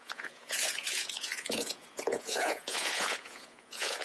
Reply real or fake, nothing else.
fake